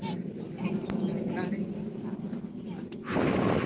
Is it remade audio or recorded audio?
recorded